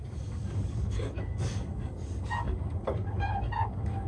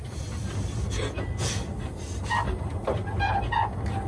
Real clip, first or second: second